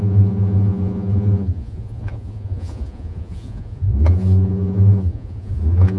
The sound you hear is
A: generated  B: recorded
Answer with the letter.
A